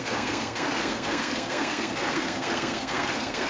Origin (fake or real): fake